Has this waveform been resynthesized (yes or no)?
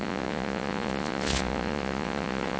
yes